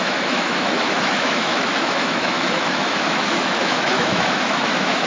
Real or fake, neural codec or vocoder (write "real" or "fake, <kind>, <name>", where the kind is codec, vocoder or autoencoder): fake, autoencoder, DAC-VAE